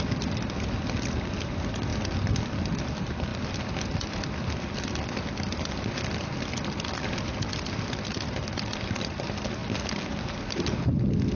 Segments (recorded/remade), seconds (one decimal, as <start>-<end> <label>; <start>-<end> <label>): 0.0-11.3 recorded